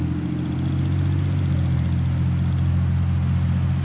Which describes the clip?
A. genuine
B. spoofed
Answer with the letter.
A